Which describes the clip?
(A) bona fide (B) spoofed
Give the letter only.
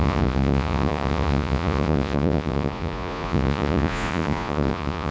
B